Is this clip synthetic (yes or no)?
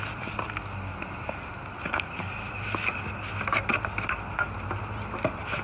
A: no